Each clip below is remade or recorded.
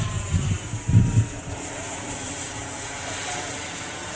recorded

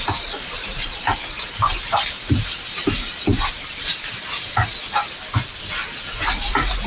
remade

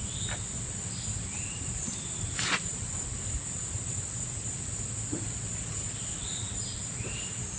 recorded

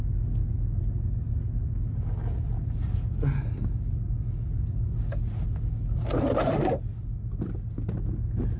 recorded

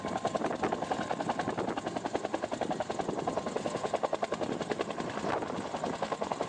recorded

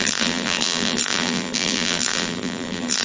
remade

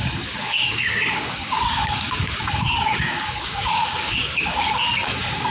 remade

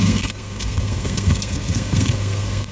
remade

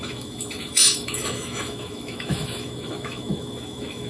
remade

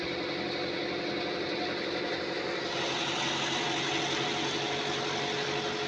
recorded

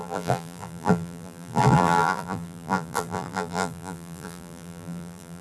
remade